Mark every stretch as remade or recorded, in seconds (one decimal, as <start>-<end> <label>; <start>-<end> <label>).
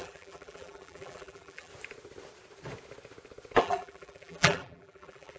0.0-1.7 remade; 1.7-3.6 recorded; 3.6-5.4 remade